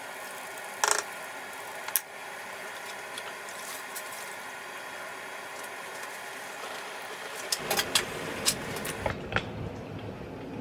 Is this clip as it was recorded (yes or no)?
yes